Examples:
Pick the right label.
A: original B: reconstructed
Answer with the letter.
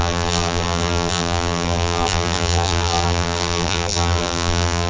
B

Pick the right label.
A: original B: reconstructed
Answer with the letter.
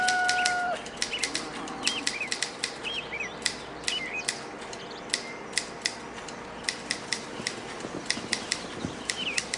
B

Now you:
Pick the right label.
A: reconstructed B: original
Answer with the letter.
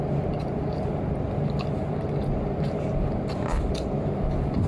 B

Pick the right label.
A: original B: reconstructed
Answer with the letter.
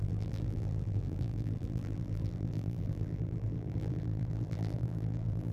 B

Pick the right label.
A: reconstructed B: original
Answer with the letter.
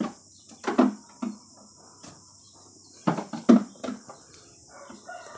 B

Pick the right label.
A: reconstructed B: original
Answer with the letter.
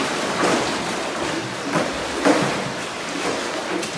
B